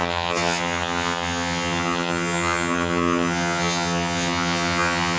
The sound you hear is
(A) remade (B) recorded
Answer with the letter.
A